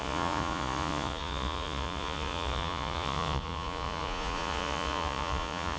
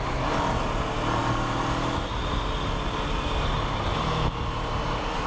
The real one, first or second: second